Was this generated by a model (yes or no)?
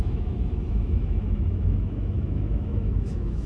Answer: yes